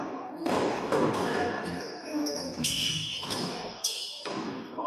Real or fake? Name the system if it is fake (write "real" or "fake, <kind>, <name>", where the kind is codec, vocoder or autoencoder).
fake, codec, DAC